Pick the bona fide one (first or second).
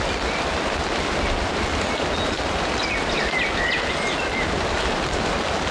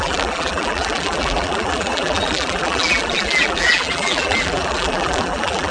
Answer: first